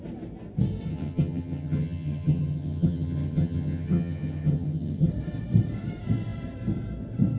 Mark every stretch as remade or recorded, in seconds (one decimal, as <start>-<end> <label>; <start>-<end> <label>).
0.0-0.9 recorded; 0.9-5.1 remade; 5.1-7.4 recorded